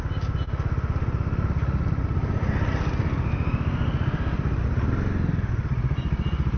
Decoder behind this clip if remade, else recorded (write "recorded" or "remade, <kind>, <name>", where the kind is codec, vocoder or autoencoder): recorded